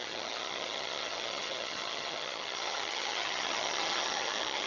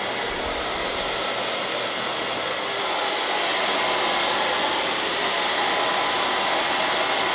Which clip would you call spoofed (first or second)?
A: first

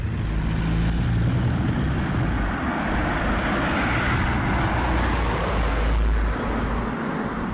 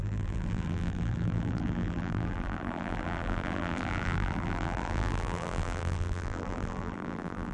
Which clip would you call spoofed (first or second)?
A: second